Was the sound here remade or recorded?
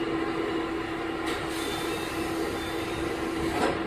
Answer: recorded